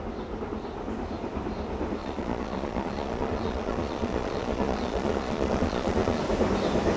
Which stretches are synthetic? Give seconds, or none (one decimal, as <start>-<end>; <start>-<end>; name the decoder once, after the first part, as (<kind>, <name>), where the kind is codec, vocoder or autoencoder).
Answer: 2.0-6.2 (vocoder, Vocos)